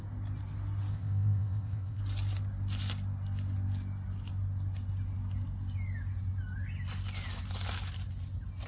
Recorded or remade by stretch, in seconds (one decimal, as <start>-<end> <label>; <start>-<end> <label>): 0.0-0.9 recorded; 0.9-2.0 remade; 2.0-8.7 recorded